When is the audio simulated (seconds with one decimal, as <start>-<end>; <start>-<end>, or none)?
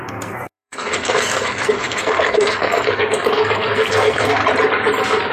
0.0-4.4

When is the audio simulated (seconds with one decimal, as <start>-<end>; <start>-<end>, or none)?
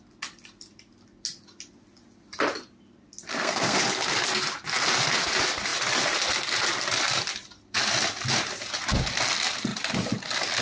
3.3-3.8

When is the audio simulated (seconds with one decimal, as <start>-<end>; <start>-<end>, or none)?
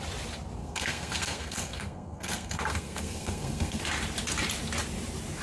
0.6-3.8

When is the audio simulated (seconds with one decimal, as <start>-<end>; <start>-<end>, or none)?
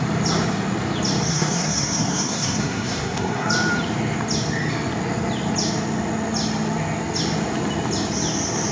1.3-3.5